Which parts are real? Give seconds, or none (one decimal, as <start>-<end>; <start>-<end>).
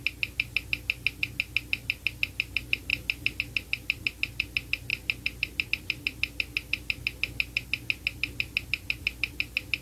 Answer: 0.0-9.8